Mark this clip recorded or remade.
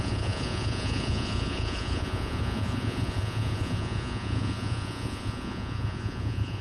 remade